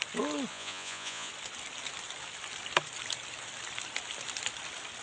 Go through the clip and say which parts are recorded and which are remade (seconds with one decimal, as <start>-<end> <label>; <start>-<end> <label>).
0.0-0.5 recorded; 0.5-1.3 remade; 1.3-5.0 recorded